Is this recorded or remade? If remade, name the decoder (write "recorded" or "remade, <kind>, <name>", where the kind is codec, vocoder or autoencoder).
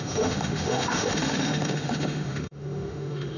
remade, autoencoder, DAC-VAE